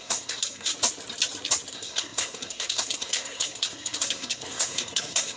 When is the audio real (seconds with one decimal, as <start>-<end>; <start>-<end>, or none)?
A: 0.7-1.7